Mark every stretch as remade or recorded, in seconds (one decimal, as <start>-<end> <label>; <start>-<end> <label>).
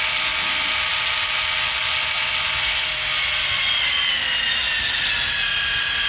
0.0-6.1 recorded